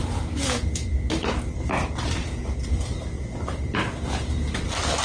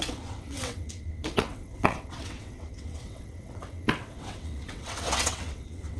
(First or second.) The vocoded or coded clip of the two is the second